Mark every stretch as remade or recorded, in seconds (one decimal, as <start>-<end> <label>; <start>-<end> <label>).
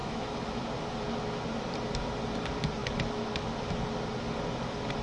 0.0-0.6 remade; 0.6-5.0 recorded